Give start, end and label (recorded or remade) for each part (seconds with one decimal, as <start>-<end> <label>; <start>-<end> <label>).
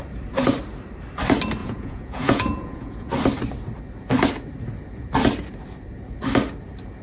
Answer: 0.0-1.6 recorded; 1.6-3.1 remade; 3.1-7.0 recorded